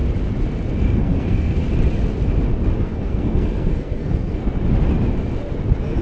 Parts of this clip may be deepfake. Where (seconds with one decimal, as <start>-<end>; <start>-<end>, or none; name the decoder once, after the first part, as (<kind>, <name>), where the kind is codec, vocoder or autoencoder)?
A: 0.8-1.6 (codec, SNAC); 2.8-4.4